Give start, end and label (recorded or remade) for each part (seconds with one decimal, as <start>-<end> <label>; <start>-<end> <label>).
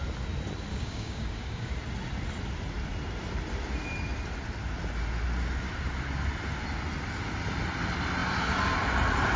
0.0-0.7 recorded; 0.7-1.7 remade; 1.7-9.4 recorded